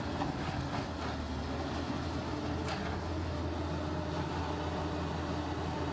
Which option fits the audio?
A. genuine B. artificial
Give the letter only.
A